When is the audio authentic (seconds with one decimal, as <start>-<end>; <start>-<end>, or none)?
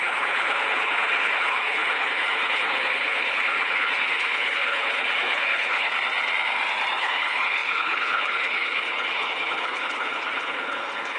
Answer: 5.9-7.0